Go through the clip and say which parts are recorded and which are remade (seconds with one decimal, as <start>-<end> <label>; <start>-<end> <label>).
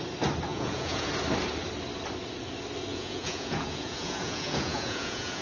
0.0-0.5 recorded; 0.5-1.1 remade; 1.1-2.9 recorded; 2.9-5.4 remade